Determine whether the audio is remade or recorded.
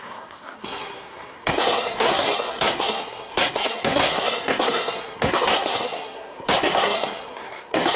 remade